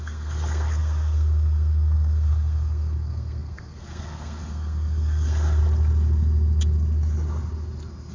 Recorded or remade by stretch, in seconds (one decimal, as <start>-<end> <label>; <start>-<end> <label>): 0.0-5.6 remade; 5.6-8.1 recorded